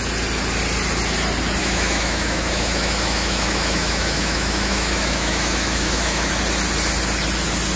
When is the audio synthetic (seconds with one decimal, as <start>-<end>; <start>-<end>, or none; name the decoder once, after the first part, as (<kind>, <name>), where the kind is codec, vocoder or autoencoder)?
1.6-6.3 (autoencoder, DAC-VAE)